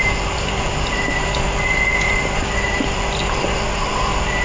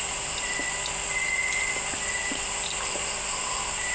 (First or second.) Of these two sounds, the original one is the second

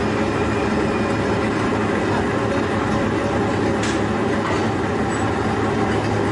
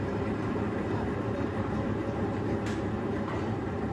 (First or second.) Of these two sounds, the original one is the first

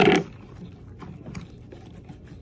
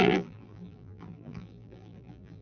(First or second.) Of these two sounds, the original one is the first